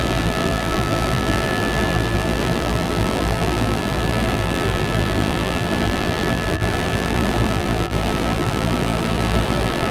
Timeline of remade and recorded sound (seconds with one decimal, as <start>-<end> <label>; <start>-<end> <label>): 0.0-9.9 remade